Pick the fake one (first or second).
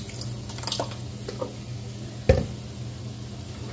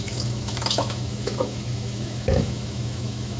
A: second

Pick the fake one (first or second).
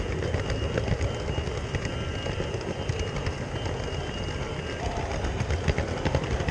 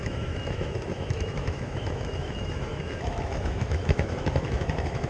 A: second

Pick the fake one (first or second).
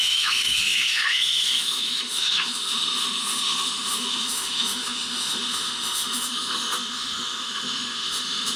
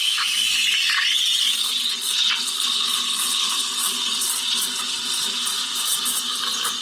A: first